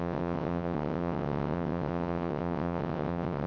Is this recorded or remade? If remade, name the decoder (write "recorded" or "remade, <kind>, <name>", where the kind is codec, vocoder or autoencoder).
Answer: remade, vocoder, WaveNeXt